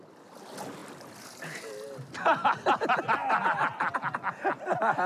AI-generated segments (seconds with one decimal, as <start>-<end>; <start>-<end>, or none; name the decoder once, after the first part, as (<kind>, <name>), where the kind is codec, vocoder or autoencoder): none